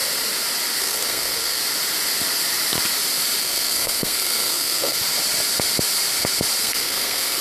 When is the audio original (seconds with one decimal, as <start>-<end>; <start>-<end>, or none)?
0.0-0.8; 1.6-3.4; 5.0-6.6